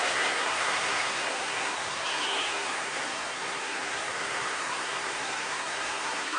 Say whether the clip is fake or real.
fake